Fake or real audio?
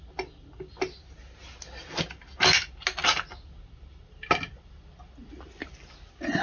real